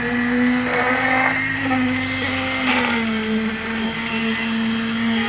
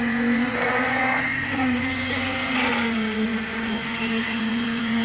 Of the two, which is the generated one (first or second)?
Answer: second